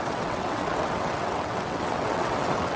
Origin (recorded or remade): remade